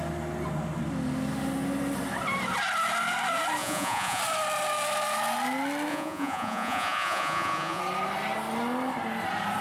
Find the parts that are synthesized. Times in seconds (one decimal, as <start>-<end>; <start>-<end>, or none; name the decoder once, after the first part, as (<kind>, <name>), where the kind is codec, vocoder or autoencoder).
3.6-4.2 (vocoder, Vocos); 5.9-7.8